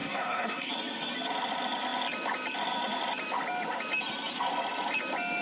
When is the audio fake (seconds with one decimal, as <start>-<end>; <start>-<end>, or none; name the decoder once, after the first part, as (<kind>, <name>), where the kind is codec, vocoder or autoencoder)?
0.0-0.7 (codec, SNAC)